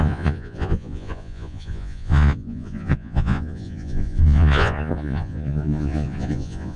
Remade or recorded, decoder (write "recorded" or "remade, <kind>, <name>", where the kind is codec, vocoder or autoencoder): remade, vocoder, Vocos